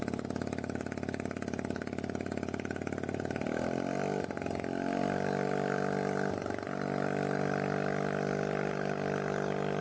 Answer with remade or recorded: recorded